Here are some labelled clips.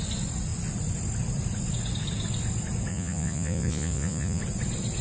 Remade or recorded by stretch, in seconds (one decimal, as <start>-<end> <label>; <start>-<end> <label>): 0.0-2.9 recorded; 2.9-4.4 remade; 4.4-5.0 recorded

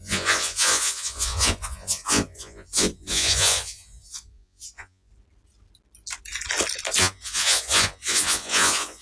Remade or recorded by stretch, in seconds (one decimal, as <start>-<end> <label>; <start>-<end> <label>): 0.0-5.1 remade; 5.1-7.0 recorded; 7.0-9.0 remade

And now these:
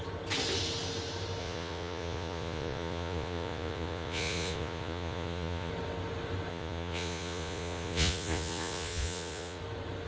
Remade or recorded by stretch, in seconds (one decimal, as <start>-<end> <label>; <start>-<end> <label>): 0.0-1.4 recorded; 1.4-5.7 remade; 5.7-6.5 recorded; 6.5-9.6 remade; 9.6-10.1 recorded

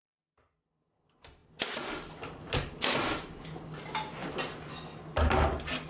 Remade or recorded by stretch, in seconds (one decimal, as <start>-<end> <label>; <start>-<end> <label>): 0.0-5.9 recorded

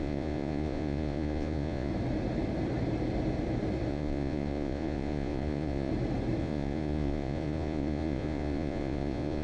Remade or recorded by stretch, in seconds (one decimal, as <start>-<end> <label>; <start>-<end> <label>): 0.0-1.9 remade; 1.9-3.9 recorded; 3.9-5.9 remade; 5.9-6.4 recorded; 6.4-9.4 remade

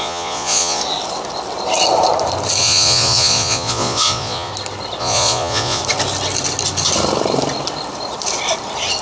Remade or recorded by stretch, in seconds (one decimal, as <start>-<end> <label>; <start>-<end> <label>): 0.0-0.8 remade; 0.8-2.6 recorded; 2.6-4.5 remade; 4.5-5.0 recorded; 5.0-5.8 remade; 5.8-9.0 recorded

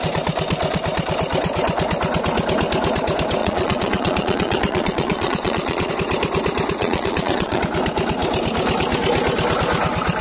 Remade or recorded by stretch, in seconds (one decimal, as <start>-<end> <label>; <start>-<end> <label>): 0.0-3.4 recorded; 3.4-5.9 remade; 5.9-6.8 recorded; 6.8-7.6 remade; 7.6-10.2 recorded